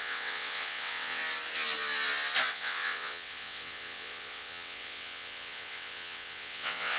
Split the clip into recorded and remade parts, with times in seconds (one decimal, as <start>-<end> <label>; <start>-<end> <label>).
0.0-1.2 remade; 1.2-2.5 recorded; 2.5-7.0 remade